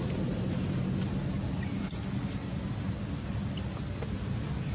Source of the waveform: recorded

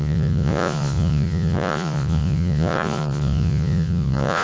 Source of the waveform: remade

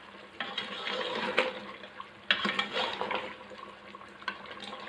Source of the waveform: recorded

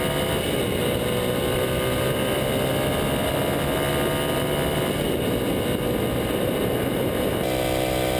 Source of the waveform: recorded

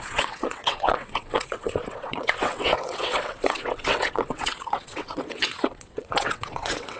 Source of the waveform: remade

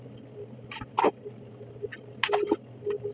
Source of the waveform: recorded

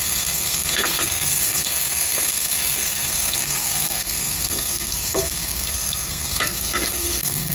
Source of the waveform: remade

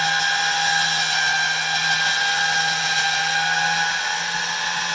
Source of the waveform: recorded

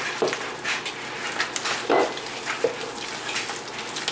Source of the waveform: recorded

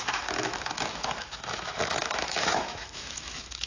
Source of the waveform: remade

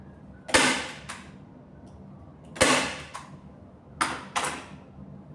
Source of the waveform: recorded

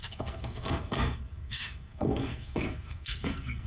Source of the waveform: remade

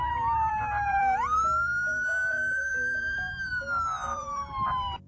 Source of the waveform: remade